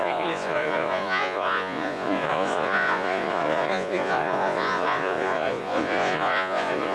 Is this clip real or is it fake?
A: fake